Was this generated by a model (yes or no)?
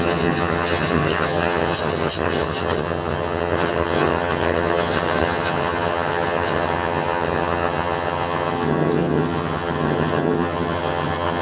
yes